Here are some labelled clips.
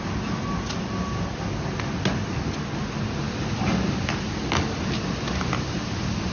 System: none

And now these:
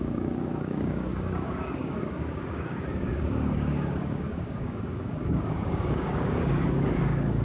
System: codec, DAC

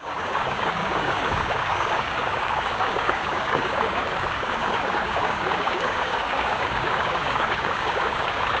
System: codec, DAC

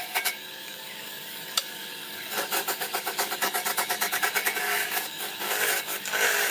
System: codec, DAC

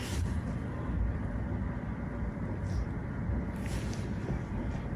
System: none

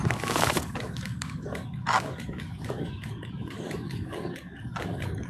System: codec, DAC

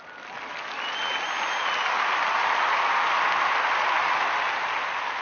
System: none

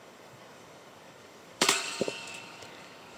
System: codec, DAC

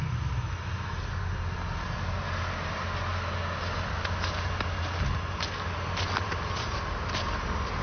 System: none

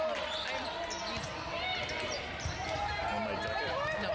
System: none